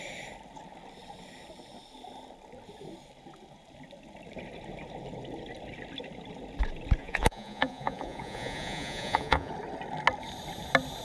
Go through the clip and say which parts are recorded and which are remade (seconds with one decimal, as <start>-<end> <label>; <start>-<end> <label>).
0.0-7.0 recorded; 7.0-9.5 remade; 9.5-11.0 recorded